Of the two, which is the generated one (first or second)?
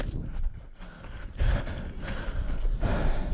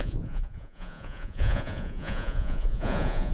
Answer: second